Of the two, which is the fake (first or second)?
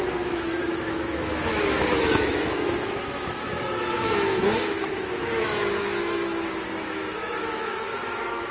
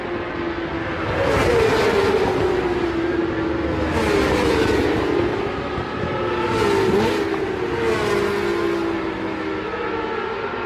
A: first